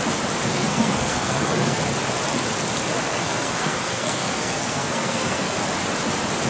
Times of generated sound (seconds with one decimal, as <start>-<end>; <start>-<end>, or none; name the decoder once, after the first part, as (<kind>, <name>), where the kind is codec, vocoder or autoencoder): 0.5-1.8 (codec, SNAC); 3.1-5.6